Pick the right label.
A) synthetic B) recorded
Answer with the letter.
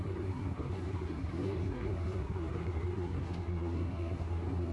A